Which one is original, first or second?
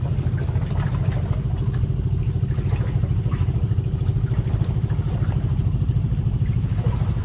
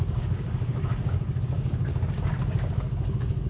first